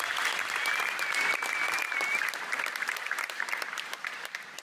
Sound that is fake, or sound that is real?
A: real